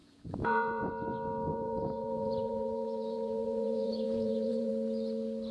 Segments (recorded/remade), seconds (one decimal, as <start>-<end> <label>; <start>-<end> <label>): 0.0-0.9 remade; 0.9-1.5 recorded; 1.5-4.7 remade; 4.7-5.5 recorded